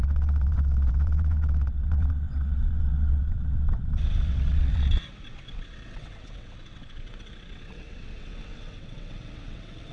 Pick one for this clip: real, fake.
fake